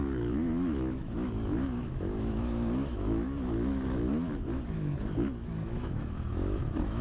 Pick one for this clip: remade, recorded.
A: remade